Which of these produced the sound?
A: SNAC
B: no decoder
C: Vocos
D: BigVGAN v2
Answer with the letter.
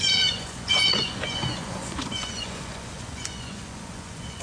C